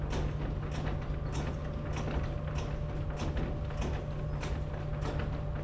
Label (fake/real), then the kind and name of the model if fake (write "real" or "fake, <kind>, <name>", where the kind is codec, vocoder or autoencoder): real